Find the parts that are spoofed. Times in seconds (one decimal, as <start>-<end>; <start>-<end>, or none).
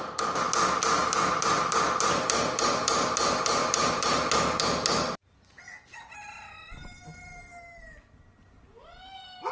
none